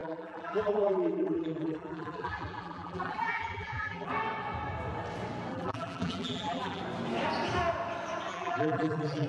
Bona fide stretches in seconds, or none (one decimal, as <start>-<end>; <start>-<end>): 4.1-5.5; 6.8-8.3